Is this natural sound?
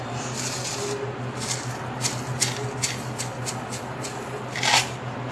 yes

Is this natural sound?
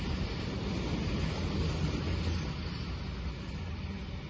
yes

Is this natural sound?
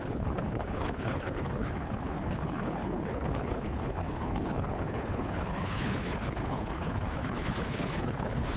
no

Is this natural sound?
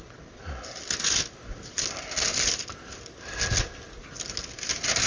yes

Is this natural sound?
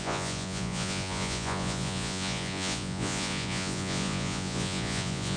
no